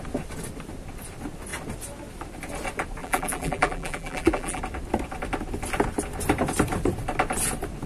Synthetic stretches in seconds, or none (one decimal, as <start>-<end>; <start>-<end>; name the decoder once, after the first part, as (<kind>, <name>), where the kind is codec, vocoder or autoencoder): 3.0-4.6 (vocoder, BigVGAN v2)